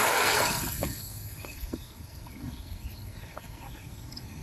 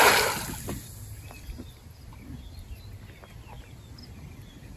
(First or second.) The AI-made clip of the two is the first